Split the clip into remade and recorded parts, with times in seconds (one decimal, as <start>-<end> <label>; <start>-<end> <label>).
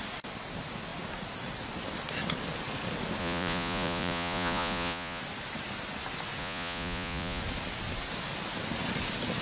0.0-3.2 recorded; 3.2-5.2 remade; 5.2-6.4 recorded; 6.4-7.4 remade; 7.4-9.4 recorded